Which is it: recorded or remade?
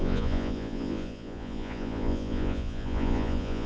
remade